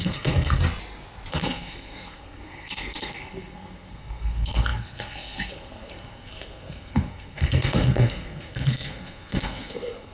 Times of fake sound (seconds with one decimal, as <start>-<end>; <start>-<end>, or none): 0.0-0.6; 1.3-10.1